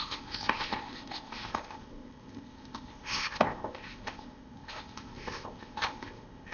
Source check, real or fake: fake